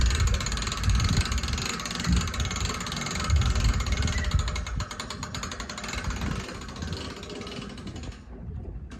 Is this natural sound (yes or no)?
yes